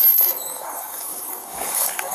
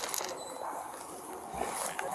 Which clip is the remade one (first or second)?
first